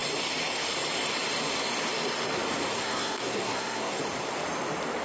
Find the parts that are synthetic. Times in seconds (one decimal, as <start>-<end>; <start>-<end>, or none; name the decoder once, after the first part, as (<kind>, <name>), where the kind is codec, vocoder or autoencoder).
2.7-4.0 (codec, SNAC)